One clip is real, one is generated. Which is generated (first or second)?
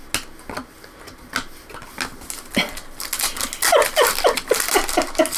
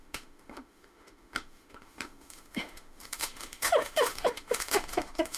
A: second